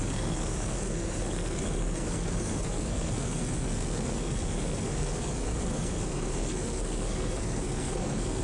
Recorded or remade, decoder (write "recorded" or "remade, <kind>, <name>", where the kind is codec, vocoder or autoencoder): remade, codec, SNAC